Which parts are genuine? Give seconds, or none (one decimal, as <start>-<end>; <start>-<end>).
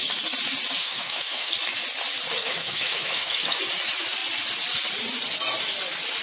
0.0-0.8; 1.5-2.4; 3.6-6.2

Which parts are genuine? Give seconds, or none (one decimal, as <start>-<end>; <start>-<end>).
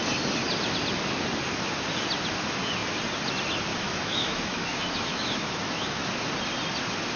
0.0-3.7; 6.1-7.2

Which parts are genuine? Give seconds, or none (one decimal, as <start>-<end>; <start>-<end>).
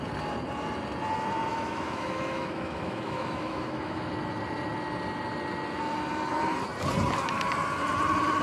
0.0-1.5; 4.1-8.4